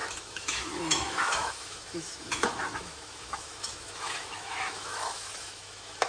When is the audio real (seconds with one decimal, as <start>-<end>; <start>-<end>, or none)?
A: none